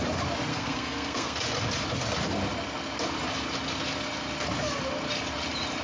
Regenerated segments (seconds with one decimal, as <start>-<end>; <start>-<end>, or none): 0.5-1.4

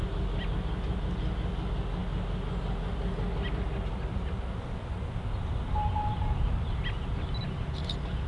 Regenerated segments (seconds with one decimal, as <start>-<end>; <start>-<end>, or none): none

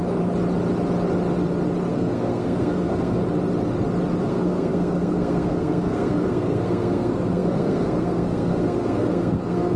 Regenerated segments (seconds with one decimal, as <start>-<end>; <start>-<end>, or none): 1.9-3.2; 4.2-9.8

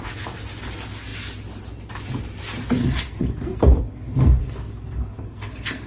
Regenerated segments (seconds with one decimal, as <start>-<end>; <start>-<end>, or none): 2.8-5.9

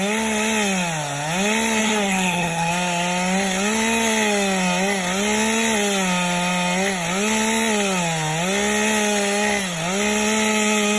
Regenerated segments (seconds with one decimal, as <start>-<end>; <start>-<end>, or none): 1.8-2.7